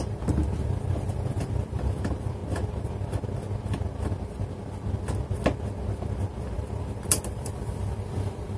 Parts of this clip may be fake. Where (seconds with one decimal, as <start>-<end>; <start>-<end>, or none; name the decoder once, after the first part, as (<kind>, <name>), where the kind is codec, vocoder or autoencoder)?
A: 0.0-0.4 (vocoder, BigVGAN v2); 0.9-2.4; 6.4-8.6